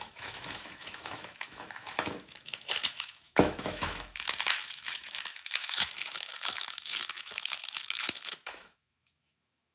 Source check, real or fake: fake